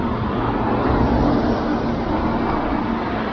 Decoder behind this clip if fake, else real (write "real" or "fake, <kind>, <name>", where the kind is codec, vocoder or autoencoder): real